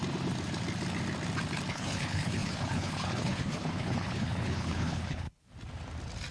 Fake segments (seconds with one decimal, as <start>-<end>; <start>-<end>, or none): 1.7-5.4